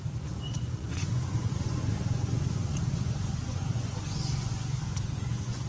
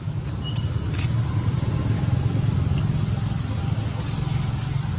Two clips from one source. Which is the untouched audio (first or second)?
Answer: second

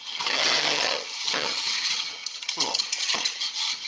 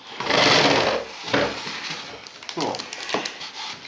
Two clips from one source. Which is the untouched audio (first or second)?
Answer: second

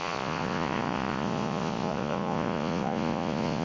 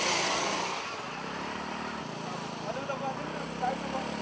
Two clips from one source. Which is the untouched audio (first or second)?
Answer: second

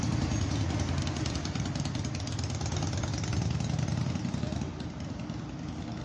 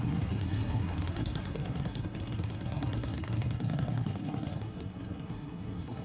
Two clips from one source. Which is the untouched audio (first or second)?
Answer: first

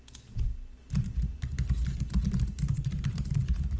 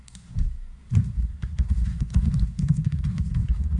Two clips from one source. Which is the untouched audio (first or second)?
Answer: first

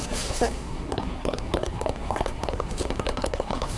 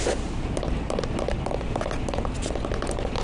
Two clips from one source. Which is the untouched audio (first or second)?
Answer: second